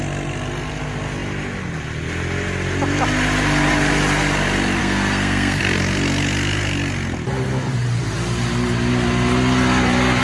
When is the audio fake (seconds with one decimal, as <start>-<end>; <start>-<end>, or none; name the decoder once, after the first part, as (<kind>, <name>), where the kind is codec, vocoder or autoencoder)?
4.8-5.6 (codec, SNAC)